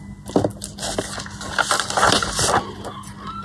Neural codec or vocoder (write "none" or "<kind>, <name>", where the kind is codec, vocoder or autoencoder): none